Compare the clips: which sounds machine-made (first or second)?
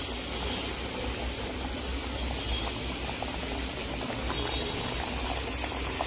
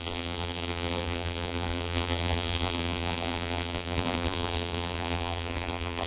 second